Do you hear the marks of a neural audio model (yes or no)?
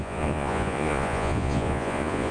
yes